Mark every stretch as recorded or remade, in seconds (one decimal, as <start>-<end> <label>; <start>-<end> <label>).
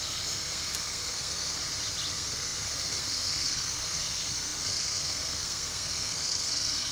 0.0-1.6 remade; 1.6-2.1 recorded; 2.1-6.9 remade